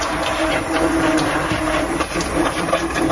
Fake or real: fake